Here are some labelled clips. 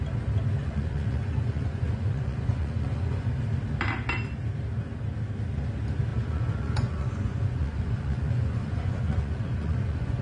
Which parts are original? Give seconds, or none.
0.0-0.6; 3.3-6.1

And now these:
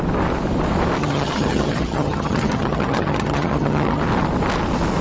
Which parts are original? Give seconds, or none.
0.0-1.0; 4.0-5.0